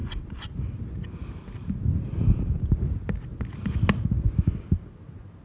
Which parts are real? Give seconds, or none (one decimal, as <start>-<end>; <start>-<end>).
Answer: 0.0-5.4